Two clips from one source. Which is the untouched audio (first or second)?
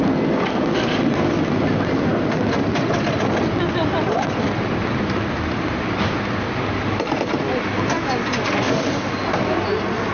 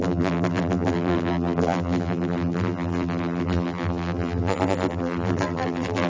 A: first